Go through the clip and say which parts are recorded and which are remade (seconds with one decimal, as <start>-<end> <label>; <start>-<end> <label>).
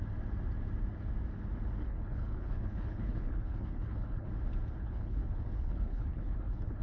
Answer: 0.0-1.8 recorded; 1.8-4.3 remade; 4.3-4.8 recorded; 4.8-6.8 remade